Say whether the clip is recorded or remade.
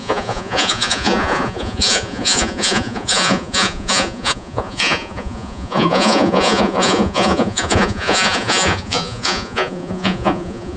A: remade